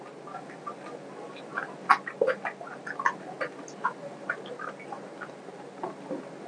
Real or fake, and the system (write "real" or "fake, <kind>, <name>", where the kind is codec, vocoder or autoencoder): real